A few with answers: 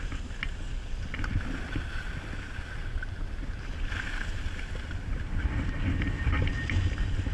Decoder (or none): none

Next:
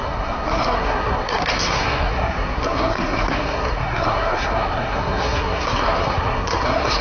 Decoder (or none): codec, SNAC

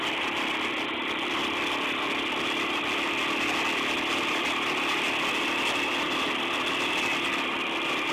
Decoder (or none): none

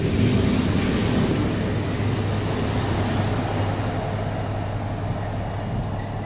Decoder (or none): none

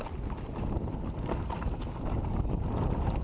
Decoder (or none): none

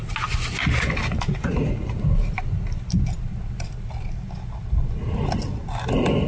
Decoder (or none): none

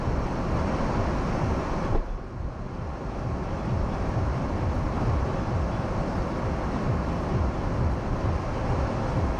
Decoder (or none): none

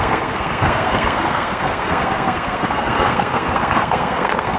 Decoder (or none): codec, SNAC